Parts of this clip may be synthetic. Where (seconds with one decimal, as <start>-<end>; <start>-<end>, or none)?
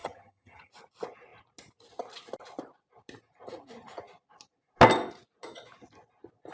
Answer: 0.0-0.7